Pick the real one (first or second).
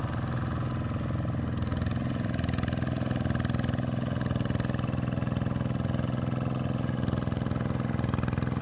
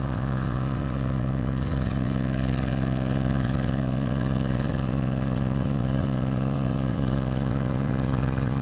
first